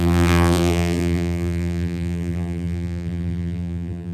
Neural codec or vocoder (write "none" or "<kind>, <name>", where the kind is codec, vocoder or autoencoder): vocoder, BigVGAN v2